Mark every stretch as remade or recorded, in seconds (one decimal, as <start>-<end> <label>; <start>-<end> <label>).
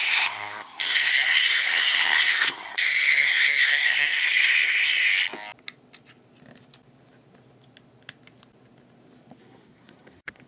0.0-5.1 remade; 5.1-9.4 recorded; 9.4-10.5 remade